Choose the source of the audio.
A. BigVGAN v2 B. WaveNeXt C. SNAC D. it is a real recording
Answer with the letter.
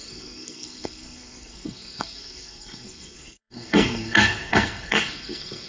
C